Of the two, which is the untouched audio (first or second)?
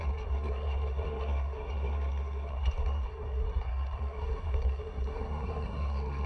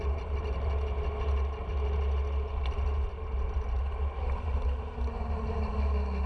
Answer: second